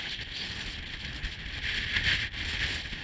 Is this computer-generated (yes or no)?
no